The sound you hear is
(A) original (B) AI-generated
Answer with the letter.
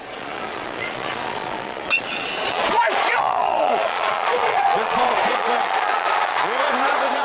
B